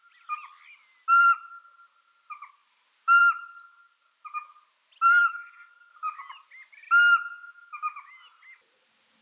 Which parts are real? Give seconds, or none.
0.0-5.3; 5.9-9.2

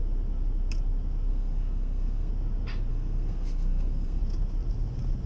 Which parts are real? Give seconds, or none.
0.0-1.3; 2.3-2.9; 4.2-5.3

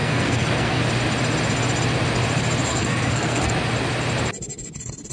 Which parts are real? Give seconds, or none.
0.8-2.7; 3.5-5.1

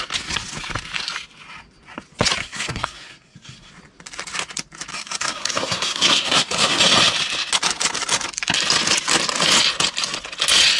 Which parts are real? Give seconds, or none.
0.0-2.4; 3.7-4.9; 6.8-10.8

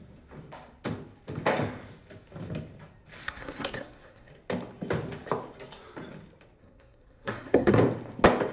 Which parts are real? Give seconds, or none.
0.0-3.2; 4.3-6.6; 7.8-8.5

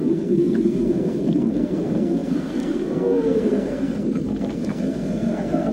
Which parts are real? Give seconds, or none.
none

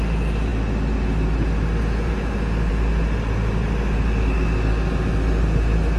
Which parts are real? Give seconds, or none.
0.0-6.0

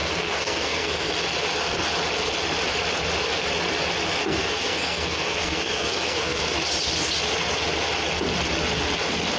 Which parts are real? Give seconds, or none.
1.1-4.2; 6.4-9.4